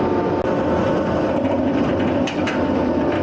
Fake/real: real